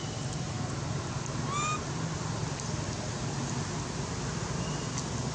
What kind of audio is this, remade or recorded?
recorded